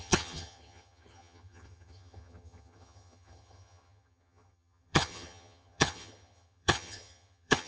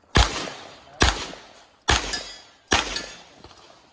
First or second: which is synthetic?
first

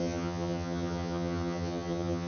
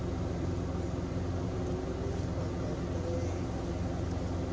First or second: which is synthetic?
first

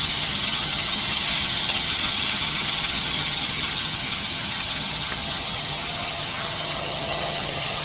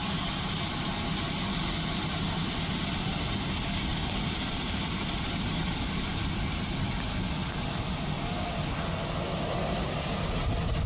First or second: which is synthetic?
first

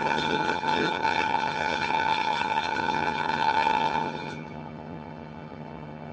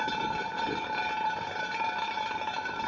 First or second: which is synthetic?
first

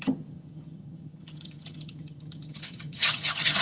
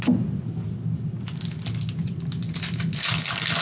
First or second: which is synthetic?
first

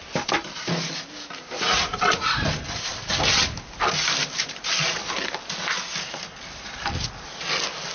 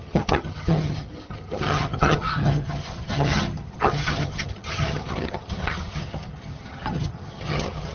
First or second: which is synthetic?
second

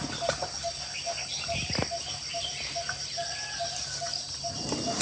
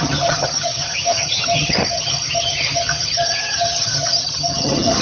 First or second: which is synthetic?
second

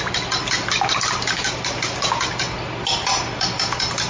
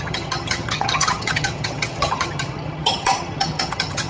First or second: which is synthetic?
second